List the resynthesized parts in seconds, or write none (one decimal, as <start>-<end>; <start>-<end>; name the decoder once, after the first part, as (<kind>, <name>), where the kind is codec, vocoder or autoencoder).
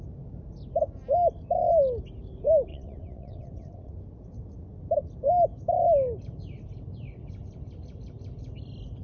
2.7-3.9 (vocoder, WaveNeXt)